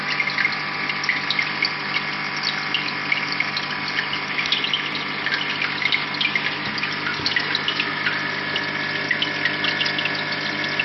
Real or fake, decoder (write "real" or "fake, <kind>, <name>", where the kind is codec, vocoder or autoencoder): real